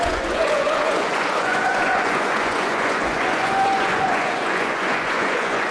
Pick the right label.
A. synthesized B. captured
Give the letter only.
A